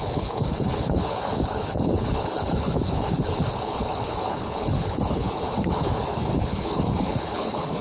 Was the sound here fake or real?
fake